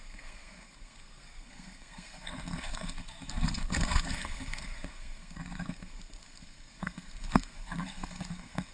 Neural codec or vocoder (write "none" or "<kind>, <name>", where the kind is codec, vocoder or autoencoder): codec, SNAC